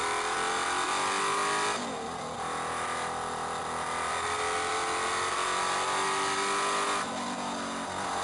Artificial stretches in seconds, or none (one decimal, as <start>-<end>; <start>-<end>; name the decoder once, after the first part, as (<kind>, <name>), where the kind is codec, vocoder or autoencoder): none